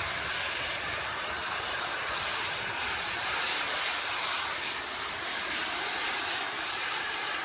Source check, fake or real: fake